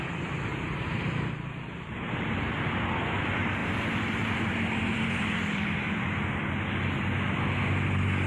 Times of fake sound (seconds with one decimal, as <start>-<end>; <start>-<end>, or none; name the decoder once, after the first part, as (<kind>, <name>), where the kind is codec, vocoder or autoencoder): 0.5-2.6 (vocoder, BigVGAN v2); 3.6-6.0